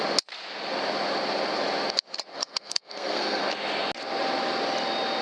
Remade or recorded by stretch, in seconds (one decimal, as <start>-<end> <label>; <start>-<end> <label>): 0.0-2.3 recorded; 2.3-3.4 remade; 3.4-5.2 recorded